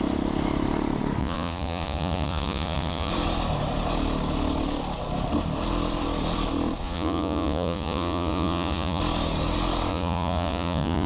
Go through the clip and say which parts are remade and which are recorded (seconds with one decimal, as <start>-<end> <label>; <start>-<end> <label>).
0.0-1.2 recorded; 1.2-3.1 remade; 3.1-6.8 recorded; 6.8-9.0 remade; 9.0-9.9 recorded; 9.9-11.1 remade